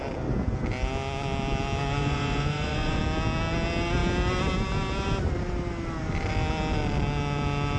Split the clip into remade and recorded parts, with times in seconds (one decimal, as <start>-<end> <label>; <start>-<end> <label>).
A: 0.0-2.0 recorded; 2.0-3.0 remade; 3.0-7.8 recorded